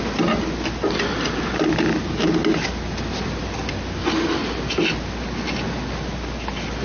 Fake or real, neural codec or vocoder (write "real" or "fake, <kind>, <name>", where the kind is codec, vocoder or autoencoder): real